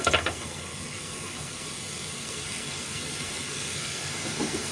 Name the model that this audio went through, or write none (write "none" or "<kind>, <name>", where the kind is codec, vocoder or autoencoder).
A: codec, SNAC